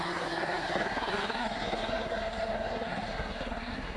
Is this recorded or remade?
remade